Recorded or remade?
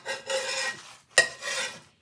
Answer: recorded